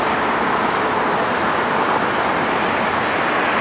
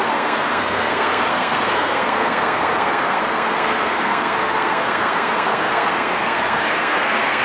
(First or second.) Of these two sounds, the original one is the first